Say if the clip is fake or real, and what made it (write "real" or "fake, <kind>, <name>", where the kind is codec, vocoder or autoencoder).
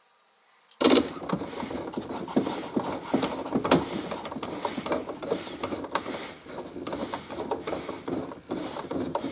fake, vocoder, BigVGAN v2